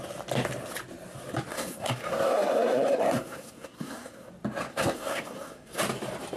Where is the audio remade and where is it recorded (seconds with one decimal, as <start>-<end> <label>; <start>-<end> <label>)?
0.0-1.5 recorded; 1.5-4.3 remade; 4.3-4.7 recorded; 4.7-5.8 remade; 5.8-6.4 recorded